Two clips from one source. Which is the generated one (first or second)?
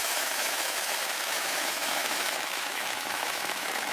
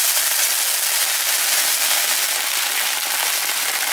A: first